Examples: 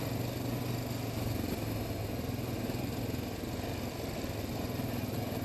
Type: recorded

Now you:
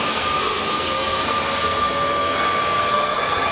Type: remade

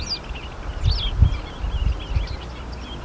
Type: recorded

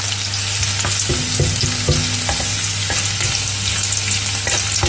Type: recorded